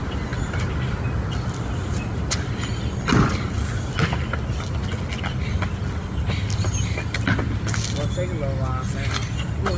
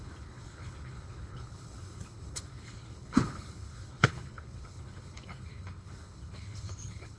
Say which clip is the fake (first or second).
second